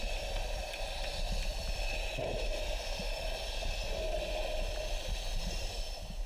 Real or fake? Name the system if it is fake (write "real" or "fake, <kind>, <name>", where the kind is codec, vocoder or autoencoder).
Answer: real